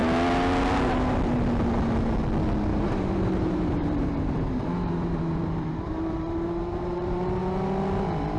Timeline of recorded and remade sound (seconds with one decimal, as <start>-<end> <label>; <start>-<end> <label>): 0.0-2.7 recorded; 2.7-7.4 remade; 7.4-8.4 recorded